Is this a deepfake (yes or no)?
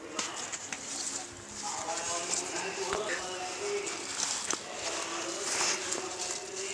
no